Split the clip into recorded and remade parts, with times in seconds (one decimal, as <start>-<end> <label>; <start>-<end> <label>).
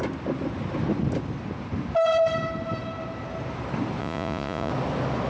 0.0-4.0 recorded; 4.0-4.7 remade; 4.7-5.3 recorded